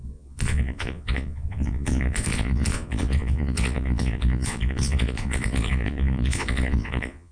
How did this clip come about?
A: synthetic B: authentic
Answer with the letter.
A